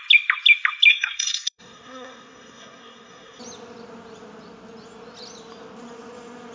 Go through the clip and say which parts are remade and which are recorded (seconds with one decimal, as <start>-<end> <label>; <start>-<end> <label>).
0.0-0.9 recorded; 0.9-3.4 remade; 3.4-6.5 recorded